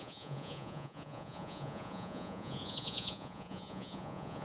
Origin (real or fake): fake